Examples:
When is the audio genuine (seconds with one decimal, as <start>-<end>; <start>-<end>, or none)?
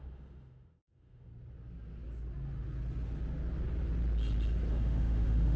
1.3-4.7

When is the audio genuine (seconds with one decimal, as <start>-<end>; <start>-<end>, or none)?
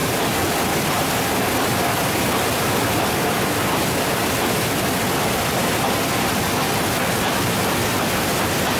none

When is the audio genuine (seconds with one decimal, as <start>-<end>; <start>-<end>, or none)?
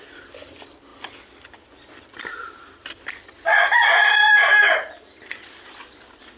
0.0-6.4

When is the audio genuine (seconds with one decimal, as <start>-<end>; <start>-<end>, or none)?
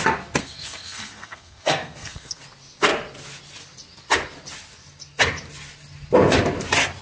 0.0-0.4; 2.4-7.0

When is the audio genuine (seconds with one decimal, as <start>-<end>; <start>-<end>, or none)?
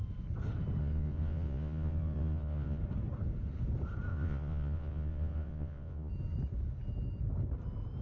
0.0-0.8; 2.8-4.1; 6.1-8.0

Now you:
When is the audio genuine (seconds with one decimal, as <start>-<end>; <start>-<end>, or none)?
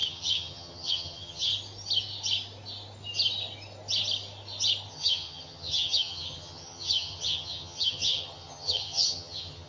1.5-4.9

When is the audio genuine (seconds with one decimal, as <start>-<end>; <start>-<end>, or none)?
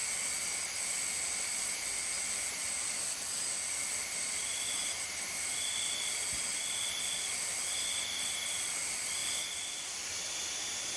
0.0-11.0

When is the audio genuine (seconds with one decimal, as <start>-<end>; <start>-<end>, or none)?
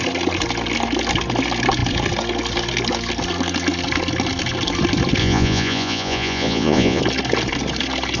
0.0-5.2; 7.0-8.2